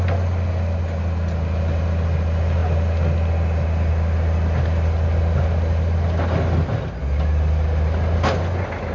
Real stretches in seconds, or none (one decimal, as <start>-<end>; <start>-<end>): 0.0-8.9